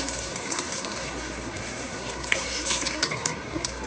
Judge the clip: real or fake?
fake